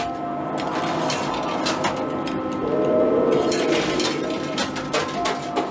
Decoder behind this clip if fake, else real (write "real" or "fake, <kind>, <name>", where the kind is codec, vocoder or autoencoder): real